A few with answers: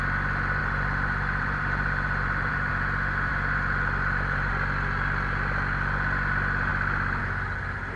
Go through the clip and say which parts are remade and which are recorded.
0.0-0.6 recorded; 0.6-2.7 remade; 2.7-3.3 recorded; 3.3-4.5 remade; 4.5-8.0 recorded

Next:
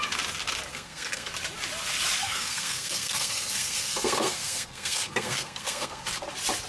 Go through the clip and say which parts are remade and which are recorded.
0.0-0.7 recorded; 0.7-1.3 remade; 1.3-2.2 recorded; 2.2-6.2 remade; 6.2-6.7 recorded

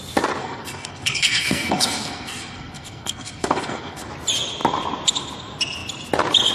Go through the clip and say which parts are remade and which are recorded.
0.0-0.4 recorded; 0.4-4.1 remade; 4.1-6.5 recorded

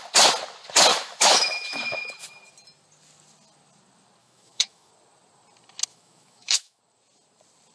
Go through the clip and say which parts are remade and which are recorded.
0.0-0.9 recorded; 0.9-2.3 remade; 2.3-4.2 recorded; 4.2-4.9 remade; 4.9-5.9 recorded; 5.9-6.8 remade; 6.8-7.7 recorded

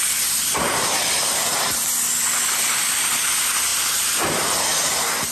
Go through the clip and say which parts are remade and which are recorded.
0.0-5.3 recorded

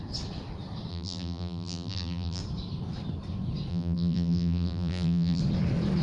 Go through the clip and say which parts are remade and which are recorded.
0.0-0.9 recorded; 0.9-2.4 remade; 2.4-3.7 recorded; 3.7-5.4 remade; 5.4-6.0 recorded